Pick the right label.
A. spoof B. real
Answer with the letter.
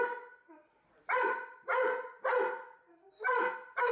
A